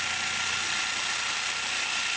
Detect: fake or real real